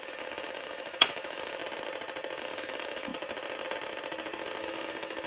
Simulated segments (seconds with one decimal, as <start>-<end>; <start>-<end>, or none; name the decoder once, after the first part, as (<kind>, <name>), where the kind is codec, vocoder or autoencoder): 0.0-1.6 (autoencoder, DAC-VAE); 2.4-3.1; 4.6-5.3